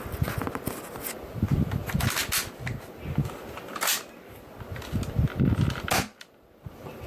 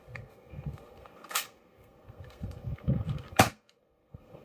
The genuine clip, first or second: first